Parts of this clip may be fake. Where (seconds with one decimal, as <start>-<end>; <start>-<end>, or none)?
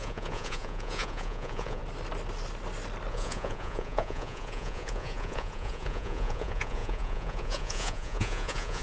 0.0-1.8; 3.1-8.8